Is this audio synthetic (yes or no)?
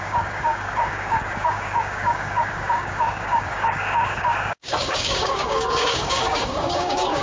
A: yes